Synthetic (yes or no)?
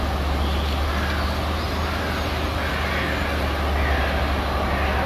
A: no